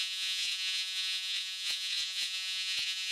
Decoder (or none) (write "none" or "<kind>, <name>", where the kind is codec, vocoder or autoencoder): vocoder, Vocos